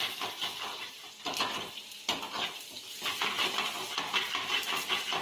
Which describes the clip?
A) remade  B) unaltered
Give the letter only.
B